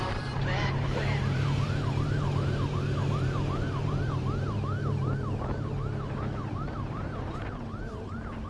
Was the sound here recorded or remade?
remade